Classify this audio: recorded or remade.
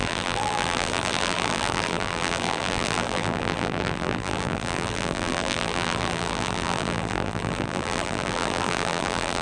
remade